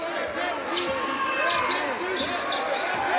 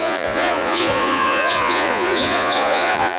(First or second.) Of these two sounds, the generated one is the second